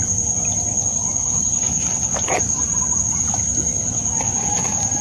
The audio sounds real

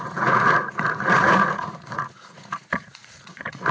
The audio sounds fake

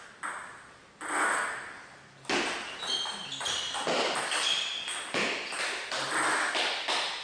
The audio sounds real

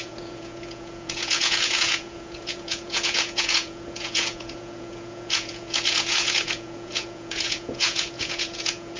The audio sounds fake